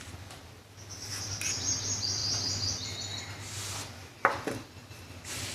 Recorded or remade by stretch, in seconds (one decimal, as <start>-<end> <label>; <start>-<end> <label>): 0.0-5.5 recorded